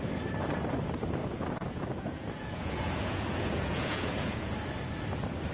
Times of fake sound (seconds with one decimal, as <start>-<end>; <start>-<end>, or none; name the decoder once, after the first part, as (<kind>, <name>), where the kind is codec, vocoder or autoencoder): 1.2-4.5 (vocoder, Vocos)